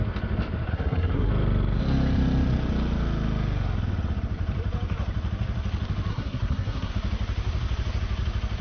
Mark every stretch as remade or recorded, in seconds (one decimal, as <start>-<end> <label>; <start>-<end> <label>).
0.0-0.7 recorded; 0.7-1.3 remade; 1.3-6.1 recorded; 6.1-6.9 remade; 6.9-8.6 recorded